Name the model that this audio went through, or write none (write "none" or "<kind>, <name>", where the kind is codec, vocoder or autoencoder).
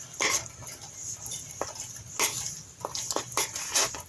none